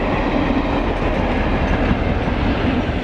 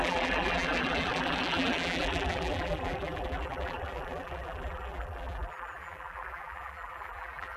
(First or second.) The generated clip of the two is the second